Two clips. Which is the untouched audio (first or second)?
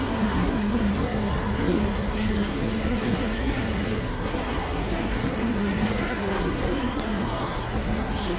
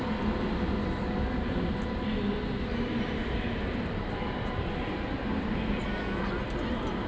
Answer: second